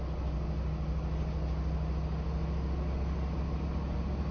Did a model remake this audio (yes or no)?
no